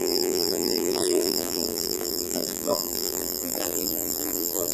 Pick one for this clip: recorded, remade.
remade